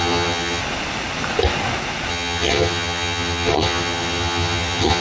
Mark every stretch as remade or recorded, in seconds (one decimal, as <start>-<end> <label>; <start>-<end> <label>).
0.0-0.6 remade; 0.6-2.1 recorded; 2.1-5.0 remade